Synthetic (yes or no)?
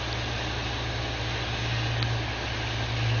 no